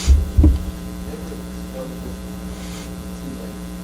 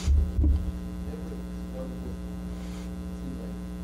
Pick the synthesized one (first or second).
first